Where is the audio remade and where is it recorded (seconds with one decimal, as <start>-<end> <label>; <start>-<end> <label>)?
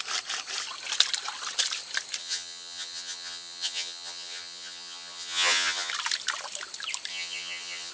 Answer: 0.0-2.2 recorded; 2.2-5.9 remade; 5.9-7.1 recorded; 7.1-7.9 remade